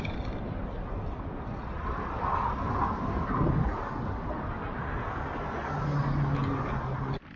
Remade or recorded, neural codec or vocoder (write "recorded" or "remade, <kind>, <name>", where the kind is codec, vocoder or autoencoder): recorded